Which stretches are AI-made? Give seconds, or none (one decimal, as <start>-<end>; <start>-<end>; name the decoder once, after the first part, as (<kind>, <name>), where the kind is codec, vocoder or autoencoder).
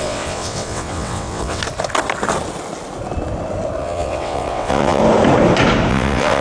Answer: 0.0-1.6 (vocoder, WaveNeXt); 3.8-5.0; 5.9-6.4